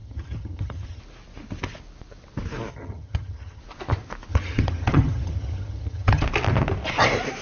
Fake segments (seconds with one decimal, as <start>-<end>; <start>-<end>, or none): 0.0-1.0; 2.7-3.6; 4.3-6.2